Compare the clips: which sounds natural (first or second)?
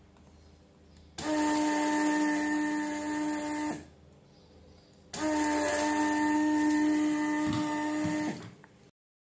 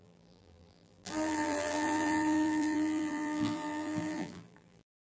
first